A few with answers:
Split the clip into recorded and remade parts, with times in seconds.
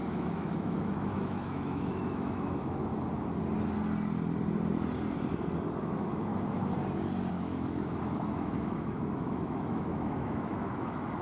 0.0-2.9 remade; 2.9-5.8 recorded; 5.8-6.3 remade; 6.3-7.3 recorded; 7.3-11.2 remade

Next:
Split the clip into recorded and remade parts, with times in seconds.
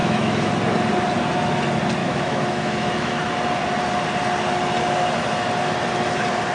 0.0-0.5 remade; 0.5-2.0 recorded; 2.0-3.3 remade; 3.3-6.5 recorded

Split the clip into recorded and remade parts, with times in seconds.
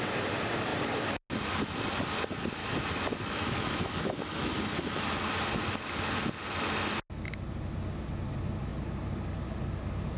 0.0-2.6 recorded; 2.6-5.1 remade; 5.1-10.2 recorded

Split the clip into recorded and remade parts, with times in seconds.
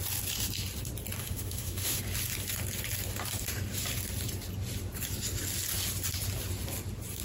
0.0-1.2 recorded; 1.2-2.0 remade; 2.0-7.2 recorded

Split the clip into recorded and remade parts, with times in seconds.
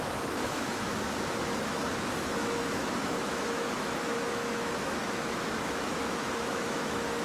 0.0-7.2 remade